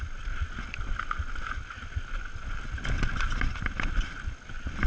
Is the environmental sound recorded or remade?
recorded